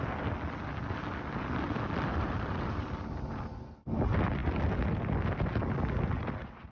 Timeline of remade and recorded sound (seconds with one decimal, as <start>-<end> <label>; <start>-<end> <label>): 0.0-2.1 recorded; 2.1-3.1 remade; 3.1-6.7 recorded